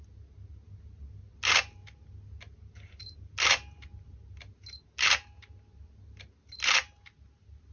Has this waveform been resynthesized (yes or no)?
no